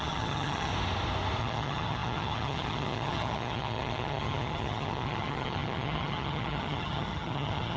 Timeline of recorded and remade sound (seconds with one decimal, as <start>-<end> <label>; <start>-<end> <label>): 0.0-0.7 remade; 0.7-1.4 recorded; 1.4-7.8 remade